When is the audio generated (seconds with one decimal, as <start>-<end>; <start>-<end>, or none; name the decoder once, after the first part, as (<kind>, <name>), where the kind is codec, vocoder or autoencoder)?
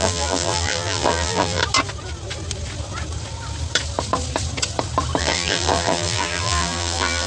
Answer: 0.0-1.6 (vocoder, BigVGAN v2); 5.2-7.3